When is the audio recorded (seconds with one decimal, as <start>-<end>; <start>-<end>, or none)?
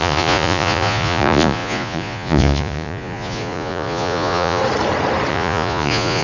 4.6-5.3